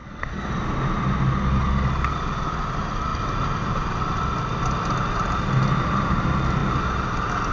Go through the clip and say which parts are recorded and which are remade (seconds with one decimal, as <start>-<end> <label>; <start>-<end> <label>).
0.0-0.5 remade; 0.5-7.5 recorded